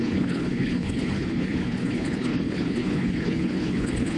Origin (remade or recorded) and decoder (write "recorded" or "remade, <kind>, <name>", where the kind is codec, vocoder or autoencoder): remade, codec, HILCodec